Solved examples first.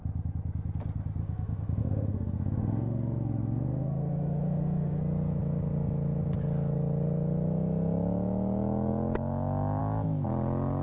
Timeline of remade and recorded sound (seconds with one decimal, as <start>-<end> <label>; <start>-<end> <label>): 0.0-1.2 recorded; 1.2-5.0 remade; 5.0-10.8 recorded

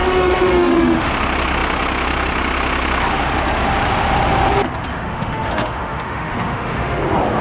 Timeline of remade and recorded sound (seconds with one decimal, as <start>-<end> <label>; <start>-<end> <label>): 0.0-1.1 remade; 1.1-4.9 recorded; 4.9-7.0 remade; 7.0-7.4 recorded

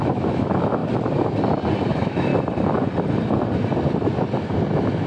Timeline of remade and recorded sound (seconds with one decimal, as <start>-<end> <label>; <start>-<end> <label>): 0.0-0.8 remade; 0.8-1.9 recorded; 1.9-2.3 remade; 2.3-5.1 recorded

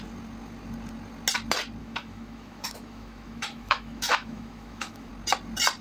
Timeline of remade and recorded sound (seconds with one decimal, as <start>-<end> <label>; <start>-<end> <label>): 0.0-1.8 recorded; 1.8-5.1 remade; 5.1-5.8 recorded